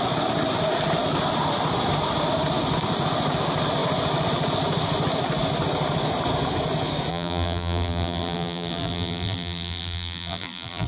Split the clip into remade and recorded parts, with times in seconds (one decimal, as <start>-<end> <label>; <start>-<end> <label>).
0.0-7.1 recorded; 7.1-10.9 remade